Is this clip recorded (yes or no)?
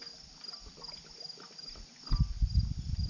yes